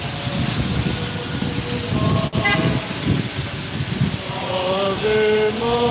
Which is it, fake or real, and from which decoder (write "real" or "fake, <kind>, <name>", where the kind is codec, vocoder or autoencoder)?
real